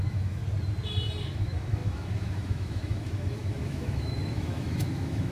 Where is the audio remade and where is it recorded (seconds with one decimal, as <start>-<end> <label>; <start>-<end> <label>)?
0.0-0.4 remade; 0.4-1.2 recorded; 1.2-5.3 remade

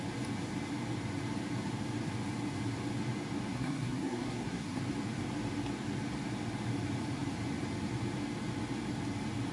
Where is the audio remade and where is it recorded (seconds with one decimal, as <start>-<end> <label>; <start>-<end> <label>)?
0.0-3.5 recorded; 3.5-4.8 remade; 4.8-9.5 recorded

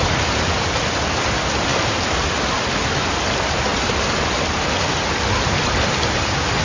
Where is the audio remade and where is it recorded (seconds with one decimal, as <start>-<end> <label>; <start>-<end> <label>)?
0.0-6.6 recorded

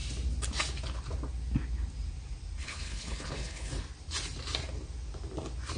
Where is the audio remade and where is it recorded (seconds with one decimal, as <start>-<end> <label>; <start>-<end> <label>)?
0.0-2.6 recorded; 2.6-3.7 remade; 3.7-5.8 recorded